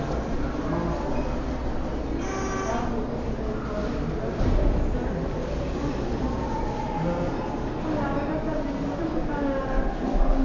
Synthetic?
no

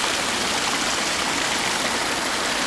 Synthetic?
no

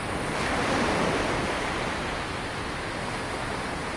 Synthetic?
no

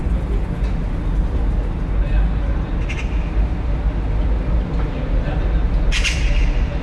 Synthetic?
no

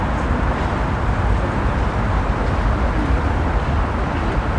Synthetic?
no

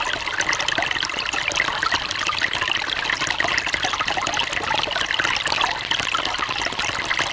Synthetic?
no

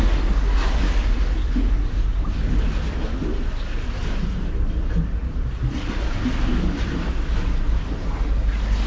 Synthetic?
no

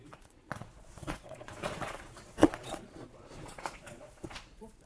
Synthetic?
yes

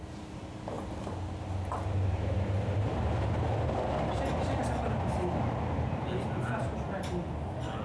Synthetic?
no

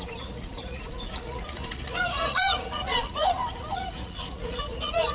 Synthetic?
yes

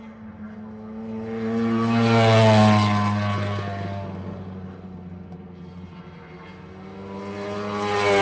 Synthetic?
no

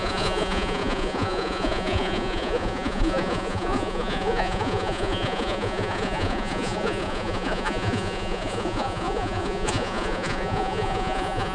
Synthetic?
yes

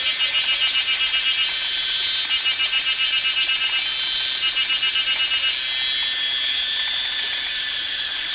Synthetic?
no